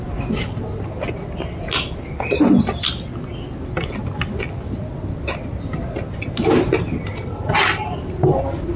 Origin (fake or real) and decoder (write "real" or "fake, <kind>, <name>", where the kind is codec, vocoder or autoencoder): real